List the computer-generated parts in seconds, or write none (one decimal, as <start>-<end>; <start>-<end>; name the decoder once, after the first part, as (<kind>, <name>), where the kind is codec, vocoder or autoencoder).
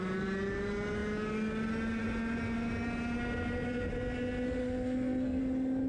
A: 4.6-5.4 (codec, SNAC)